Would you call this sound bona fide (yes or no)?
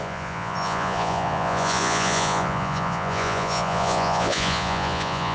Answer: no